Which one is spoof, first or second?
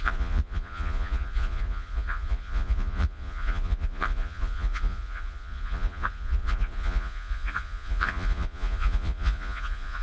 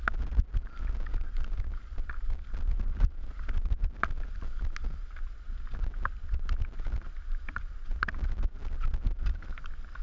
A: first